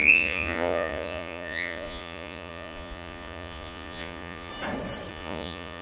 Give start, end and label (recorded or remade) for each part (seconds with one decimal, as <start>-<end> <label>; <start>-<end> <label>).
0.0-4.5 remade; 4.5-5.1 recorded; 5.1-5.8 remade